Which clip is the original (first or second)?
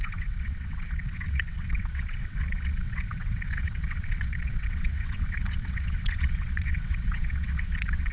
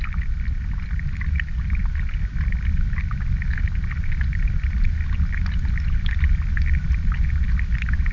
second